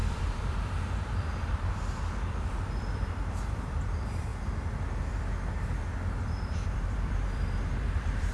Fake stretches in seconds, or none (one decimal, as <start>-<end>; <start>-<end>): 0.0-4.3; 6.2-8.3

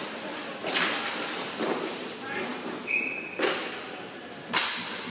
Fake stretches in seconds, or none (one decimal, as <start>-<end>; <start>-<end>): none

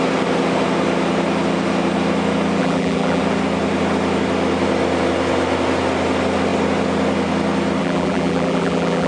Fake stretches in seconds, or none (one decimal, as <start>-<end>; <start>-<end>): 2.6-3.2; 7.8-9.1

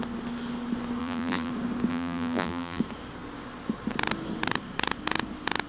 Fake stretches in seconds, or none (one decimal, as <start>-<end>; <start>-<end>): 1.0-1.5; 1.9-2.8

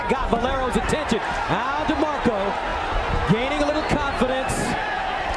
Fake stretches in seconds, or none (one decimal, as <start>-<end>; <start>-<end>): none

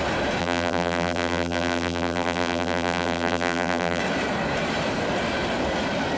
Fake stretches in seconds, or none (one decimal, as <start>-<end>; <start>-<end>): 0.4-4.0

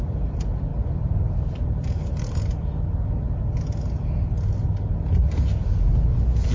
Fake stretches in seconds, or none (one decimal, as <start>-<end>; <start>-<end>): 0.7-2.4

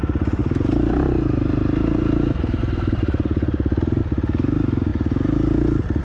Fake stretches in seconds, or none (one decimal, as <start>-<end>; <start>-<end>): 0.4-4.0